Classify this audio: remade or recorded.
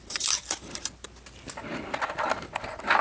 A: recorded